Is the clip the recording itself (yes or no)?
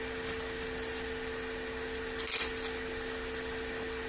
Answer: yes